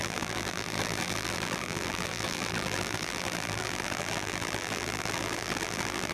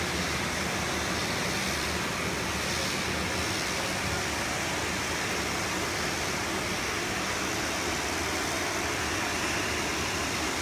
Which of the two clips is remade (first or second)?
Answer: first